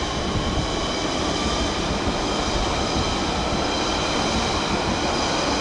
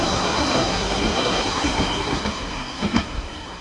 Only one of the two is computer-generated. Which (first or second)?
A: second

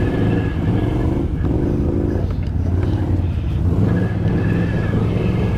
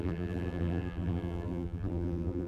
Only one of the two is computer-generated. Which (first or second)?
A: second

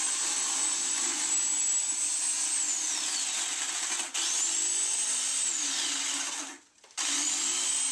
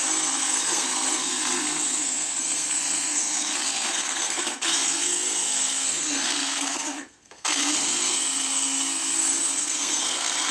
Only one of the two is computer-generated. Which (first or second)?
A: second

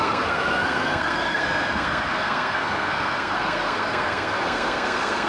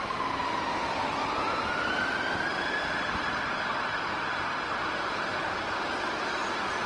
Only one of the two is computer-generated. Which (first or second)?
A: first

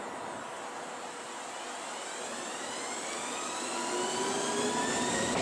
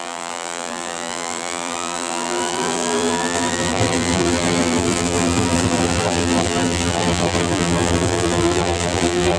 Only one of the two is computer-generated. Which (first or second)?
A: second